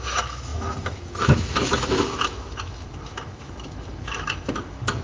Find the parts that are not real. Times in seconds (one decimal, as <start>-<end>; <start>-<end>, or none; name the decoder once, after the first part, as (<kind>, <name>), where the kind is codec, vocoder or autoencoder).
0.0-5.0 (autoencoder, DAC-VAE)